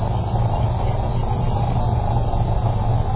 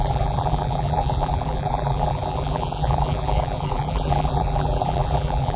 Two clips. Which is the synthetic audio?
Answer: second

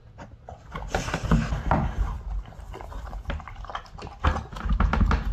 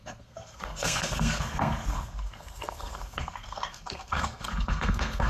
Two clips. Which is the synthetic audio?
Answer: second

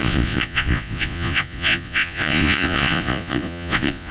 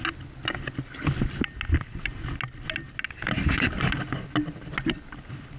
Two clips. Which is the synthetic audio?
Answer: first